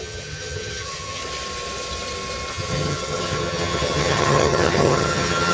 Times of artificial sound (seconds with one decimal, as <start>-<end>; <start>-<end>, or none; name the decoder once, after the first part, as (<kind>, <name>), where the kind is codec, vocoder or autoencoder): 0.0-1.2 (vocoder, HiFi-GAN); 2.5-5.5